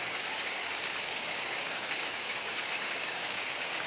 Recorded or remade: remade